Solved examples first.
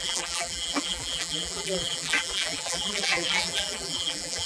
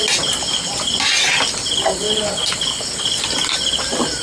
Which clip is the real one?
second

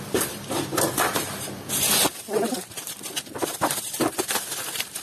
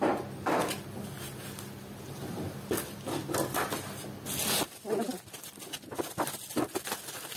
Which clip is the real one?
second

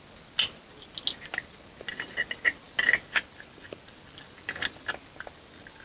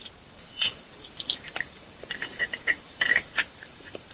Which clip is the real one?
first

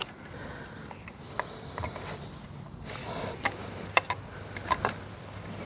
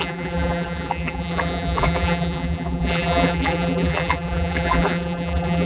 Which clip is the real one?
first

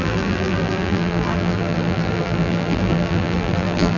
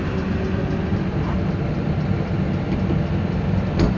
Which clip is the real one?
second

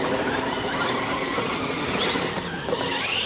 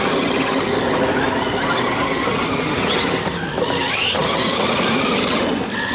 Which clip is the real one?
second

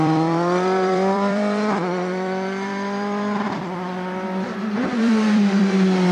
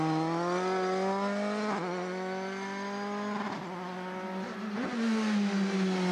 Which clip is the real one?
second